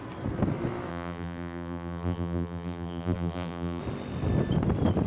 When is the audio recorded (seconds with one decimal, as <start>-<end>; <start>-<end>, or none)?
0.0-0.9; 3.8-5.1